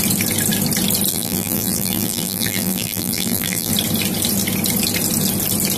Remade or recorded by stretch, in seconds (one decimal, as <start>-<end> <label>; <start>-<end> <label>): 0.0-1.1 recorded; 1.1-3.7 remade; 3.7-5.8 recorded